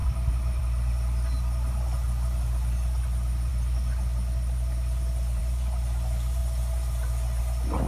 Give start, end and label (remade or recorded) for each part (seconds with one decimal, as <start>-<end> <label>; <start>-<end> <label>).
0.0-0.6 remade; 0.6-7.9 recorded